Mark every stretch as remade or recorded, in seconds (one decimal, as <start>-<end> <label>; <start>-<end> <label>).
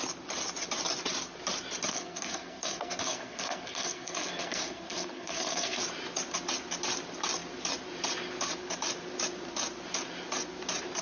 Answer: 0.0-1.9 recorded; 1.9-5.8 remade; 5.8-11.0 recorded